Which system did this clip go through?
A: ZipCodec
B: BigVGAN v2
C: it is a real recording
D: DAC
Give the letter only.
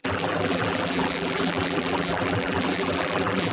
B